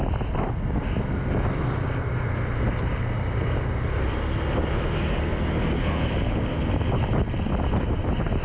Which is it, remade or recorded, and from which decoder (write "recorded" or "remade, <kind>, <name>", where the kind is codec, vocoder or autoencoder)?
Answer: recorded